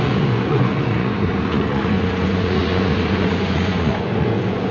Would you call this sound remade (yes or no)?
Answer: yes